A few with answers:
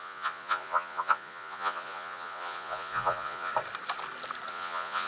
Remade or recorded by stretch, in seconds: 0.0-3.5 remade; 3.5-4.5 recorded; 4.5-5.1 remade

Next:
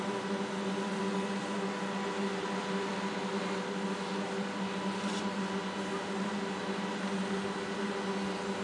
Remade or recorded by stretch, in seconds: 0.0-8.6 recorded

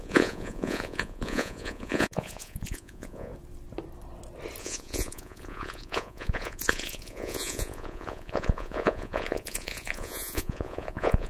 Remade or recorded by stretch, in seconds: 0.0-3.3 remade; 3.3-4.6 recorded; 4.6-11.3 remade

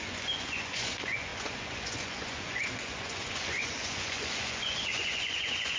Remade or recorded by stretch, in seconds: 0.0-5.8 remade

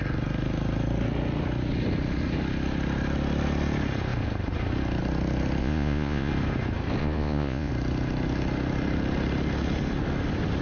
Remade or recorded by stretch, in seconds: 0.0-5.6 recorded; 5.6-6.3 remade; 6.3-7.0 recorded; 7.0-7.7 remade; 7.7-10.6 recorded

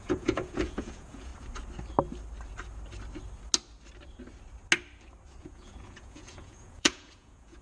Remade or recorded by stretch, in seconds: 0.0-1.3 remade; 1.3-5.4 recorded; 5.4-7.6 remade

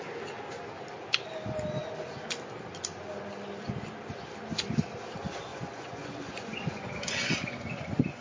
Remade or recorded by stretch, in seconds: 0.0-5.5 recorded; 5.5-8.2 remade

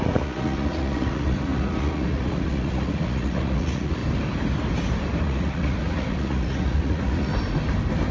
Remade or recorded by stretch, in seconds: 0.0-4.0 remade; 4.0-5.2 recorded; 5.2-7.3 remade; 7.3-8.1 recorded